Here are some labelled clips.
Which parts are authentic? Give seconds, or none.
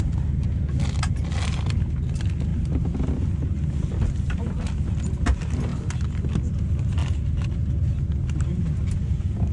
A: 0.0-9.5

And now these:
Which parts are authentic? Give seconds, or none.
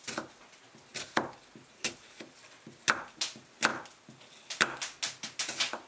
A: 0.0-5.9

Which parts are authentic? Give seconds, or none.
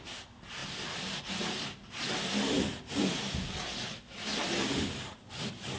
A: 0.0-5.8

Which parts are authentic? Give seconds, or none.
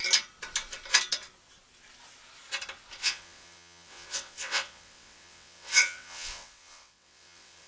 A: 0.0-3.0